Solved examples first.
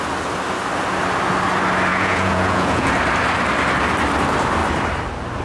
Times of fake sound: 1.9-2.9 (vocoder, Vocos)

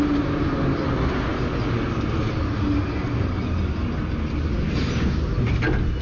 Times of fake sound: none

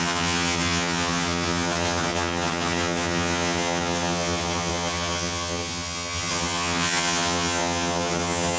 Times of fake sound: 0.0-8.6 (vocoder, HiFi-GAN)

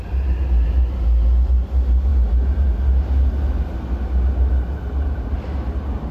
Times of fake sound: none